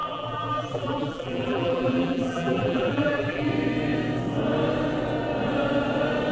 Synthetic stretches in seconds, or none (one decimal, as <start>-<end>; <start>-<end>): 0.0-3.5